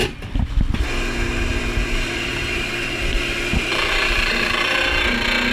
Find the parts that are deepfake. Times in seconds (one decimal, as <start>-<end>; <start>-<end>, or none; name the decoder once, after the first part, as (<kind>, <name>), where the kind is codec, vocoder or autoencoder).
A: 0.0-0.5 (vocoder, BigVGAN v2); 1.5-4.8

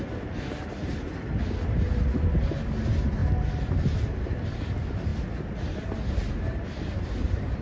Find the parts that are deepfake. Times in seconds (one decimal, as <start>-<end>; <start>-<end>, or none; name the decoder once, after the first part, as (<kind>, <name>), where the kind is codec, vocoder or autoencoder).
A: none

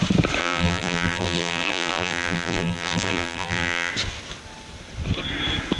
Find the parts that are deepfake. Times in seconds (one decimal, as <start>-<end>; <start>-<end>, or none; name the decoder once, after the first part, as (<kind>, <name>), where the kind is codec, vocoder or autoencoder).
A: 0.4-3.9 (vocoder, BigVGAN v2)

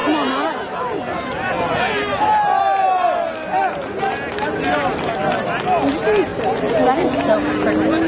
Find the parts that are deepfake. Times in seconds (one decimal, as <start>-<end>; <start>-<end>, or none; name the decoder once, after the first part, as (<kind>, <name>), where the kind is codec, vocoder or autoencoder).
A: none